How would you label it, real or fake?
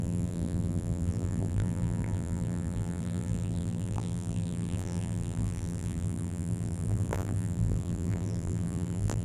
fake